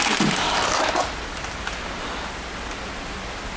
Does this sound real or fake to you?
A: real